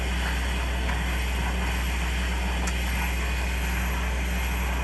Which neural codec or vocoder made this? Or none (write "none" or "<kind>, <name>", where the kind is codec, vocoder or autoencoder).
none